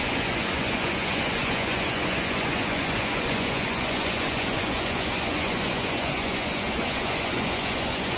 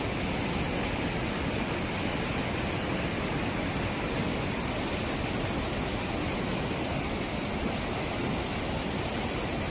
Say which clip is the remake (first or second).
first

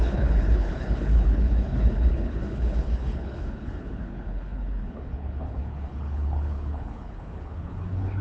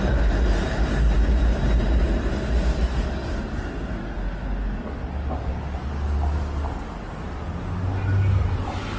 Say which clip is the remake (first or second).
first